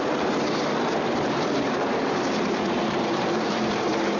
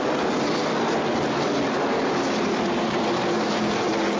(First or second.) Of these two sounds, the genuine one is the second